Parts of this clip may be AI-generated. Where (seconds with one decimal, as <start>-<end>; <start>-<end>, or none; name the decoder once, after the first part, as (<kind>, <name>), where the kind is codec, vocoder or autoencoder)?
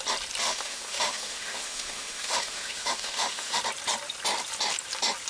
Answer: 0.4-3.6 (autoencoder, DAC-VAE)